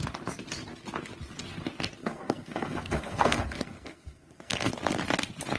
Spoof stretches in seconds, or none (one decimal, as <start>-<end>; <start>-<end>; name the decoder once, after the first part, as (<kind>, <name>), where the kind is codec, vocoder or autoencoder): 2.0-4.7 (codec, SNAC)